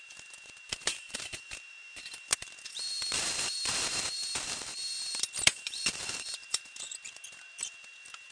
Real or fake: fake